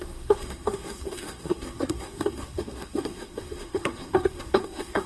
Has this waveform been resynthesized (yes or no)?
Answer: yes